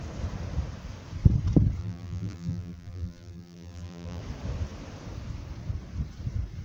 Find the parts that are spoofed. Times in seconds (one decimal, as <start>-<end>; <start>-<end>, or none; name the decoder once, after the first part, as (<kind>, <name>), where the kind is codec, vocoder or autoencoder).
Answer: 1.8-4.2 (vocoder, BigVGAN v2)